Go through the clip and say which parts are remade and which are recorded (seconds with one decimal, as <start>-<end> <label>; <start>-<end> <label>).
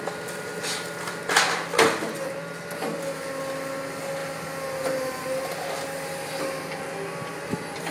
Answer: 0.0-7.9 recorded